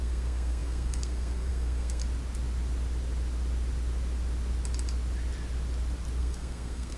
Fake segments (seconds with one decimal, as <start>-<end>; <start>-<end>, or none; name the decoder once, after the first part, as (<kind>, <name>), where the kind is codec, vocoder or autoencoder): 0.0-2.0 (codec, SNAC); 6.2-7.0